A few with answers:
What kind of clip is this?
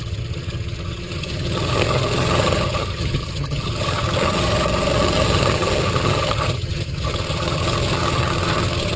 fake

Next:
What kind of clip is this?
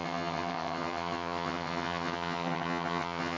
fake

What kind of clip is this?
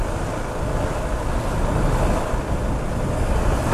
real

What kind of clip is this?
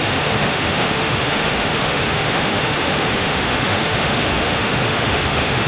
fake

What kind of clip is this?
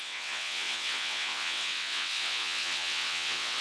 fake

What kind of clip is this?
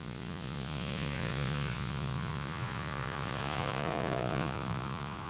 fake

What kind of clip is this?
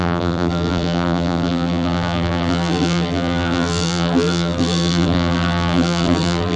fake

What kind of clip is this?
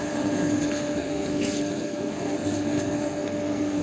fake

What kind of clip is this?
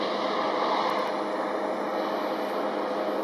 real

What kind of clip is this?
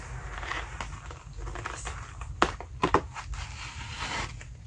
real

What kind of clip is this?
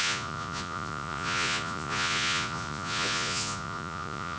fake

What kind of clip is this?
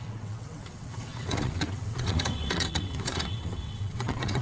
fake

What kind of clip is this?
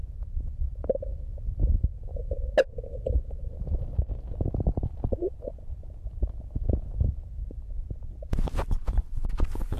real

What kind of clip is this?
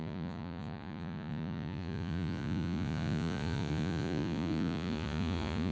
fake